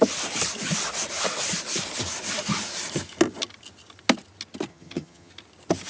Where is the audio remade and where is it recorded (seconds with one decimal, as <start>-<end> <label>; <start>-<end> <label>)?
0.0-4.7 recorded; 4.7-5.3 remade; 5.3-5.9 recorded